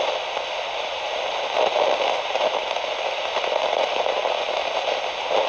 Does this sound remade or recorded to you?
recorded